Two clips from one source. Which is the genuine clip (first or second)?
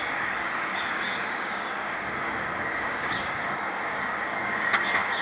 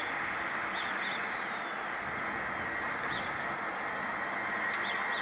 second